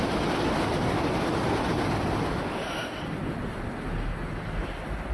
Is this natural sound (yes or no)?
yes